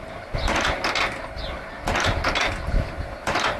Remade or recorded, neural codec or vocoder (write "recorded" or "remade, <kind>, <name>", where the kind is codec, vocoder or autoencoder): recorded